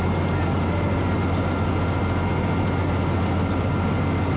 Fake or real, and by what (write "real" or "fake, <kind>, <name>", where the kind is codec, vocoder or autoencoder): real